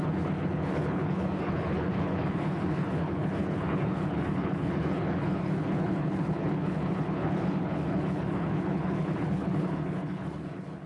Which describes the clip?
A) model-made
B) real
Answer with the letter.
A